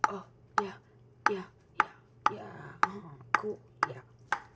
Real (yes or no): yes